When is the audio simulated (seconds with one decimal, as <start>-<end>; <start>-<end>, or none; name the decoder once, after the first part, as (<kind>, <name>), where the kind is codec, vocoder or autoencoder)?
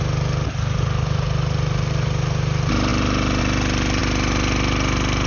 none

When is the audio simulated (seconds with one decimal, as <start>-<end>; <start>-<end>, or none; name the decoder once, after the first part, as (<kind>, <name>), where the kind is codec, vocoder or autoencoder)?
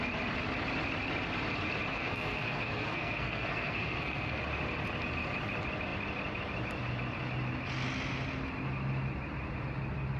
1.9-4.4 (codec, SNAC)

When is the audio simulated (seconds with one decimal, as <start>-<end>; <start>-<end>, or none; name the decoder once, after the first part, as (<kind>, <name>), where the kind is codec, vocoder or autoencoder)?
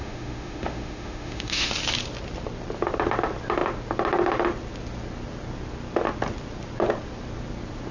0.0-1.7 (autoencoder, DAC-VAE)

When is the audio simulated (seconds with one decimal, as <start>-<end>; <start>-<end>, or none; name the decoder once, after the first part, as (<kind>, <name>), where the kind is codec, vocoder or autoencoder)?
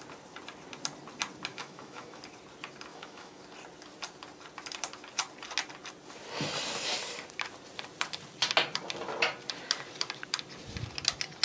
1.5-2.2 (autoencoder, DAC-VAE); 2.9-3.4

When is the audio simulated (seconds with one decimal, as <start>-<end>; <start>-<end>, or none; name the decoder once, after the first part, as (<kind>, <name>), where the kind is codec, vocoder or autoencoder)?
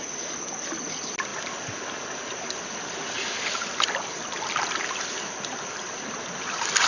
none